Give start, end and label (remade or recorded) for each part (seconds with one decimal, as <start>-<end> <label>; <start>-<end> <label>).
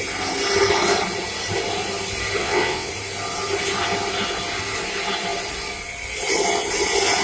0.0-2.4 recorded; 2.4-2.9 remade; 2.9-7.2 recorded